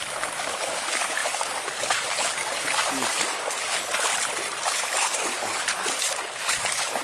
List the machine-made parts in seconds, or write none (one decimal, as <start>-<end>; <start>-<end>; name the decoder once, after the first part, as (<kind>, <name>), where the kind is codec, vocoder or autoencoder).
0.0-4.1 (codec, DAC); 4.7-7.0